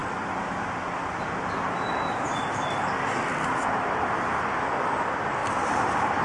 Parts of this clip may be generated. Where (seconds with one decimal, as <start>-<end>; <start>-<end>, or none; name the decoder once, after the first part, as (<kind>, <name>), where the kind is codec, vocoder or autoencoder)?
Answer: 1.0-2.4 (vocoder, BigVGAN v2); 5.4-6.2